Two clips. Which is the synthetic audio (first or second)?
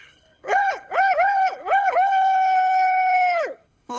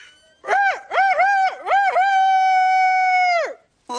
first